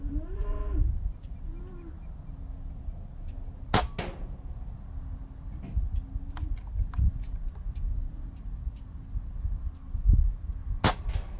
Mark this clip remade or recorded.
recorded